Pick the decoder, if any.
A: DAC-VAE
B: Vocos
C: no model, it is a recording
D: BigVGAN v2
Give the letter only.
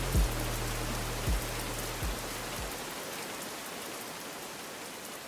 C